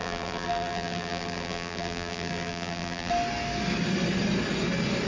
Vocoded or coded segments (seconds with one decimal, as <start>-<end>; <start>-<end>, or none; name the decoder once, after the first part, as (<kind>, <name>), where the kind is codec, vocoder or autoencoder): 0.0-3.1 (vocoder, BigVGAN v2)